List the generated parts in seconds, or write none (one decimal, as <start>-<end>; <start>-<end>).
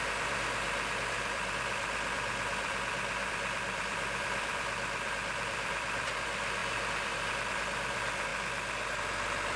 0.0-8.3; 9.1-9.6